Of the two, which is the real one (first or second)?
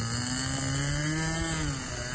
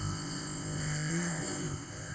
first